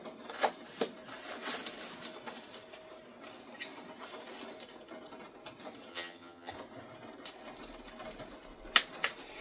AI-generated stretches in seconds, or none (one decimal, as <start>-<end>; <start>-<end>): 5.9-6.5